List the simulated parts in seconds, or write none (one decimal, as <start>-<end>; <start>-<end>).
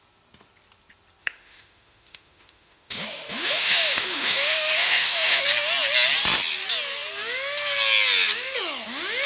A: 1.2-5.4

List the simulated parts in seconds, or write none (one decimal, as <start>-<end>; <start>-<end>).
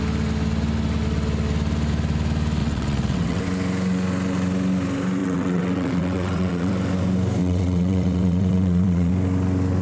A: 2.6-3.4; 5.2-6.7; 7.4-9.1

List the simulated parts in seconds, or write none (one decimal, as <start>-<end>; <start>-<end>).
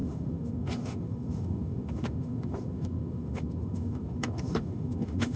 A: 0.0-5.4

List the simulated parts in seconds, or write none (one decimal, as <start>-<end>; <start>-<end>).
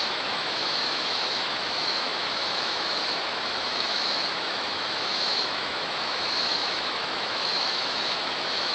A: 0.0-8.7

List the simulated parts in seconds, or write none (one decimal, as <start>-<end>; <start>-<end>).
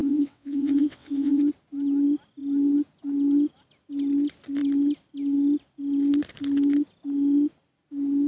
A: 0.0-1.4